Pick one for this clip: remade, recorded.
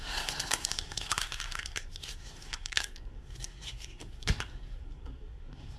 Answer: remade